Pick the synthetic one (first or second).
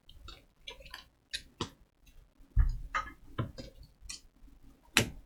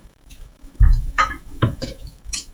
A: second